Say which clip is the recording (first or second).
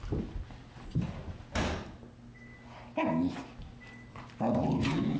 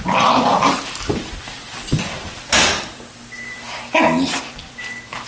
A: first